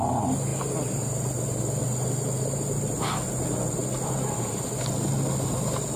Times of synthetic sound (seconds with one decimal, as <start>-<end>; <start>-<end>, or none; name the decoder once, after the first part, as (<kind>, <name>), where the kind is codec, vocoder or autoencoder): none